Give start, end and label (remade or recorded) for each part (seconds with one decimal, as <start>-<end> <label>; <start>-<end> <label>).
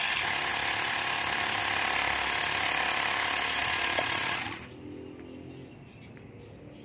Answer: 0.0-3.6 recorded; 3.6-4.6 remade; 4.6-6.8 recorded